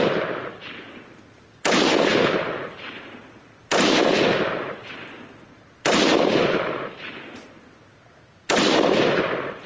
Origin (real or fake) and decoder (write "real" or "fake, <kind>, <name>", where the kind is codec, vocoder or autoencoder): real